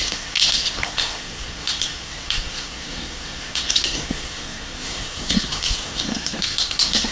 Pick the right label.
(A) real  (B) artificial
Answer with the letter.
B